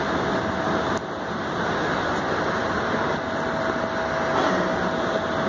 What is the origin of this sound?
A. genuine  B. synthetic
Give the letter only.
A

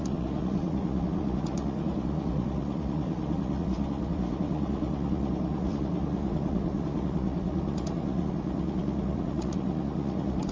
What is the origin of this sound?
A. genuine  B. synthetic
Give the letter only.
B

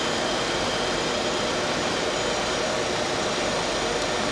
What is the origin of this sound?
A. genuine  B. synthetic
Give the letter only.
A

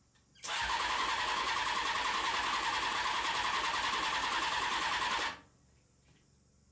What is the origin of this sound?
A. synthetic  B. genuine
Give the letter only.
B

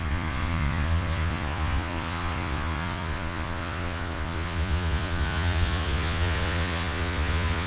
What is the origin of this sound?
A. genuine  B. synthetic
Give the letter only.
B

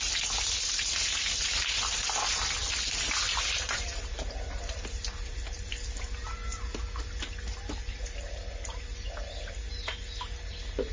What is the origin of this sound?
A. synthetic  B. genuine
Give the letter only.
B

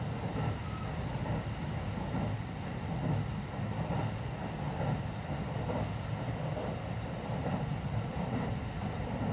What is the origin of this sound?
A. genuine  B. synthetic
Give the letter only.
A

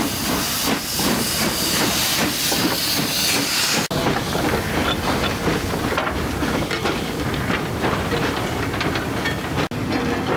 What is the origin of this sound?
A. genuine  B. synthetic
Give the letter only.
A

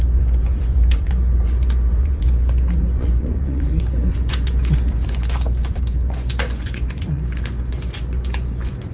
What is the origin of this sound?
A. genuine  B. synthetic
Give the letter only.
B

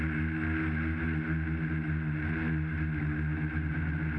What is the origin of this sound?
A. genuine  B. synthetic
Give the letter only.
A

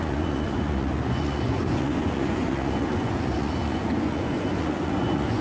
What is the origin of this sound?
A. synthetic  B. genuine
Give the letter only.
A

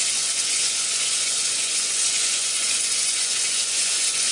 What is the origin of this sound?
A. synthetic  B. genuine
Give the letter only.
A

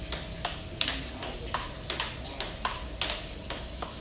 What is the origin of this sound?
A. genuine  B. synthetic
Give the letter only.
A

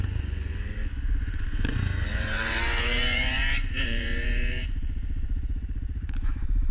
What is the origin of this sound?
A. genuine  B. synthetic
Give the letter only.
B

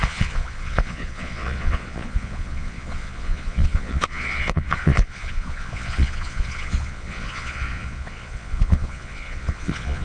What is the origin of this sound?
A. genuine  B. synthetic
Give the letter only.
B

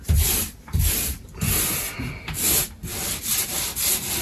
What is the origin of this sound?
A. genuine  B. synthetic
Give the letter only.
A